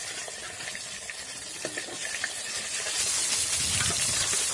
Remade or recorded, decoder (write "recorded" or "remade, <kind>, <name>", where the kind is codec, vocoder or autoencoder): recorded